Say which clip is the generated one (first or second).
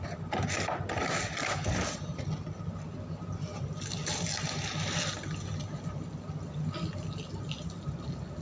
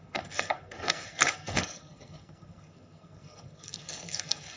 second